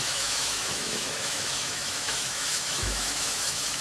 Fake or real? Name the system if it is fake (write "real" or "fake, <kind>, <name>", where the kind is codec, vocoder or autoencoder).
fake, autoencoder, DAC-VAE